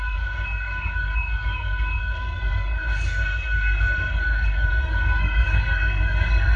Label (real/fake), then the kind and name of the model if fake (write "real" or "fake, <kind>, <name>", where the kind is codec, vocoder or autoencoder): fake, codec, SNAC